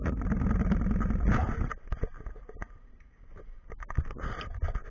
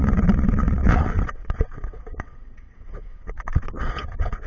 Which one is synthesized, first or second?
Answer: second